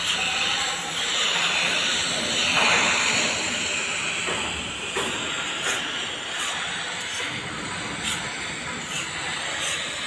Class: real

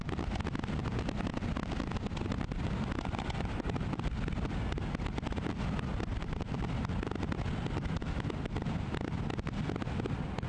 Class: real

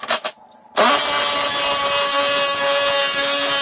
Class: real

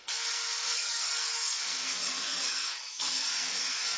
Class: fake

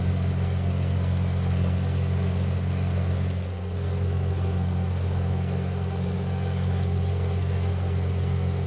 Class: fake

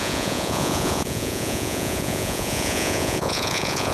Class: fake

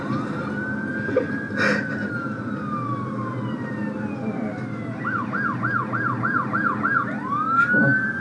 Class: real